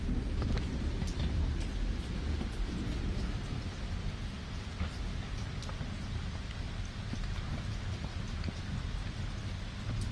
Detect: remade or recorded recorded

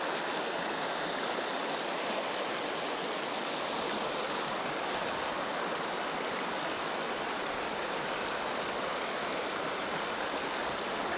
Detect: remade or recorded recorded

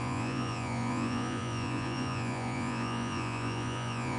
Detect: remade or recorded remade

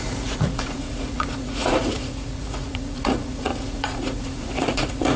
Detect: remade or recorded remade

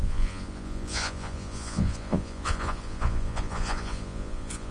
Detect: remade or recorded remade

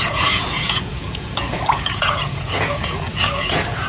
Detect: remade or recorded remade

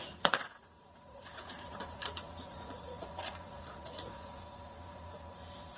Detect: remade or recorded remade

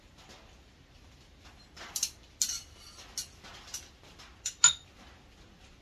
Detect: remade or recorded recorded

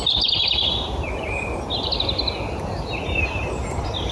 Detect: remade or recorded recorded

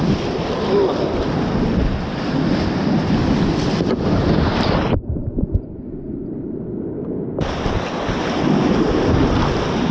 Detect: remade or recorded recorded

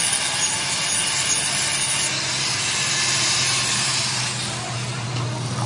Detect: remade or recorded recorded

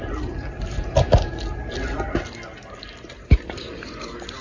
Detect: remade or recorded recorded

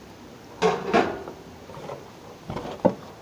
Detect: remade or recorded recorded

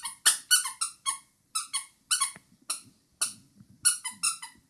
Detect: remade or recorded recorded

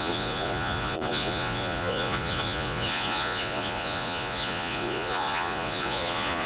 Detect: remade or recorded remade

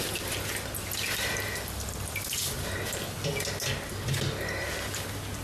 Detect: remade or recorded recorded